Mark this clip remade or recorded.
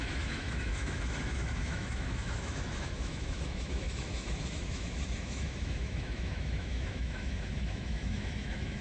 remade